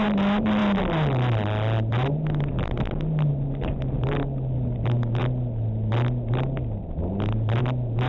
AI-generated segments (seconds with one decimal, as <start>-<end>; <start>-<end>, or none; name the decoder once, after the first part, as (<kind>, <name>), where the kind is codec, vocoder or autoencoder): none